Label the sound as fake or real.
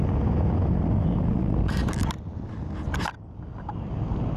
real